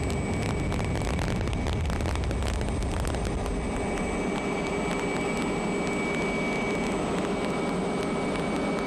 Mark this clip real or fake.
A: real